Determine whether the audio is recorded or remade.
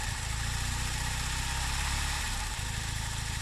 remade